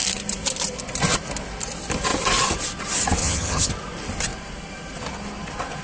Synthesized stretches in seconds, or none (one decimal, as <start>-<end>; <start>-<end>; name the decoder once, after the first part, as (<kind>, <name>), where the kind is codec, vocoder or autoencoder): 3.2-3.7 (vocoder, HiFi-GAN)